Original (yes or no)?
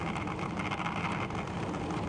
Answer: yes